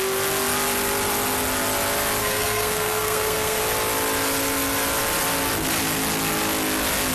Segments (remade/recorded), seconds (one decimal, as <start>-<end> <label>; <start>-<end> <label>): 0.0-2.2 recorded; 2.2-3.6 remade; 3.6-7.1 recorded